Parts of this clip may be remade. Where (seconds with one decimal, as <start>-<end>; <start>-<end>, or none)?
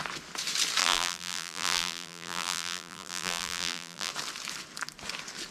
0.8-4.1